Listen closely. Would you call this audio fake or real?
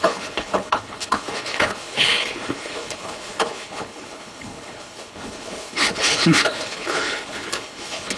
fake